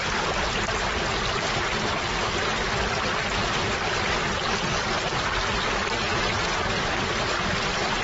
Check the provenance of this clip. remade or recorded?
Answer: recorded